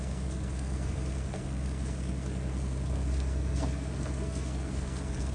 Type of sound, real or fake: fake